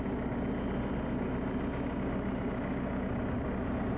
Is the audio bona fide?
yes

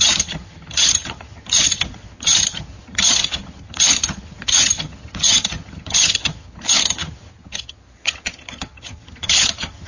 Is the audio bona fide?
no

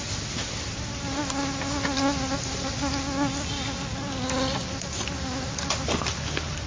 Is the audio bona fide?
yes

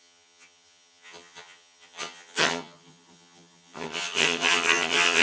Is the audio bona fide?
no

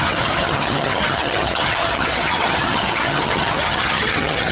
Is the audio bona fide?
no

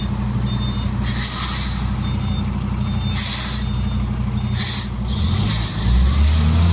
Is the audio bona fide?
yes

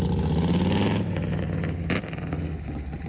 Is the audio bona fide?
yes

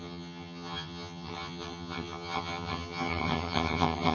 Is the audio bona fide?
no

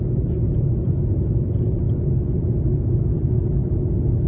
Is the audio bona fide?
yes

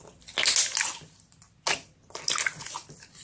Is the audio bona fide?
yes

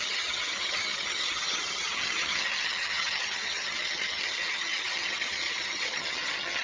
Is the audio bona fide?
no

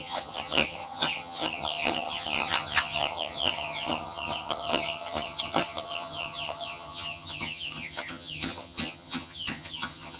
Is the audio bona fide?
no